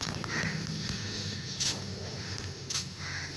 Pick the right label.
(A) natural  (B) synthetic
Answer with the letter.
B